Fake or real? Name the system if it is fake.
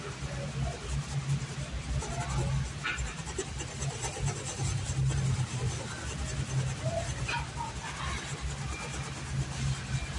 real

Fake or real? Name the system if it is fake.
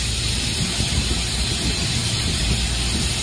real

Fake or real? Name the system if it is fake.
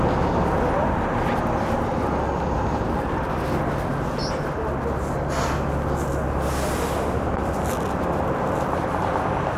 real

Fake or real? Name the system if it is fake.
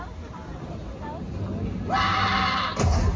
real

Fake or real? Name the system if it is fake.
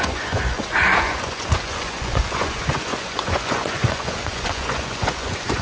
fake, vocoder, Vocos